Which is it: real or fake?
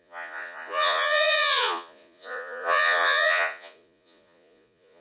fake